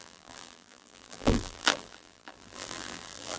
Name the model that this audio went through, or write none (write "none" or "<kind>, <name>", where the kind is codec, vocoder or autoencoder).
vocoder, BigVGAN v2